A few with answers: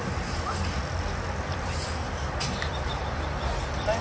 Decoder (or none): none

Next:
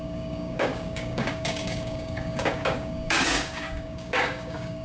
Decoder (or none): codec, DAC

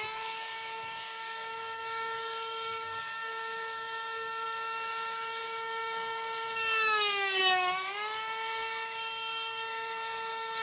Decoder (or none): codec, DAC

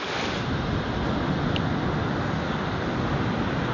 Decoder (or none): none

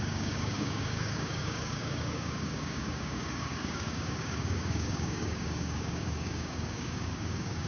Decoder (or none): codec, DAC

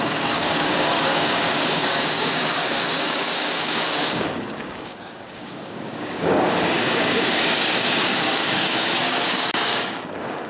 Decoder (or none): codec, DAC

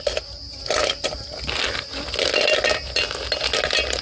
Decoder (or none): none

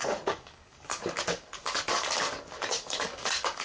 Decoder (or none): codec, DAC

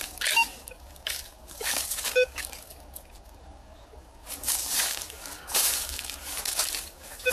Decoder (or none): codec, DAC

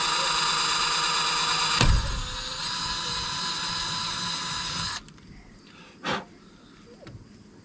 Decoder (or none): none